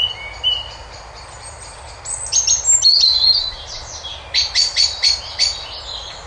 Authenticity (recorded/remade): recorded